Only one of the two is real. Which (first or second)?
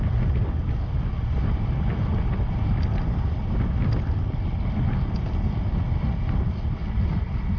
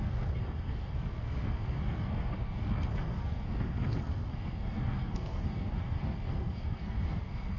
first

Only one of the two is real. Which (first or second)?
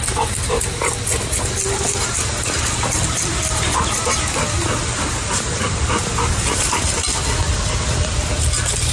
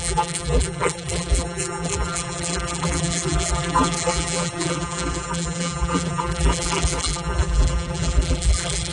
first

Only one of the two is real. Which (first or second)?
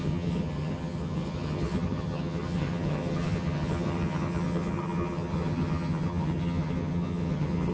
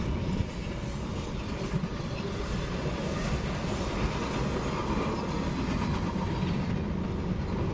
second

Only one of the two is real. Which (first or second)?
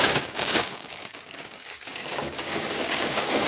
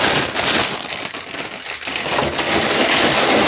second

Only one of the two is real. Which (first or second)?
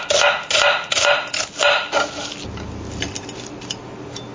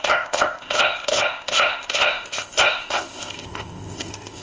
first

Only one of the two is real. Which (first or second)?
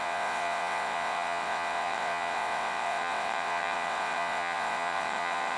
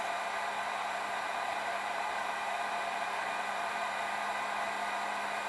second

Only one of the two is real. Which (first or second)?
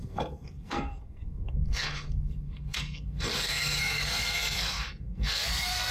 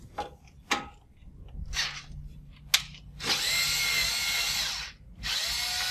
second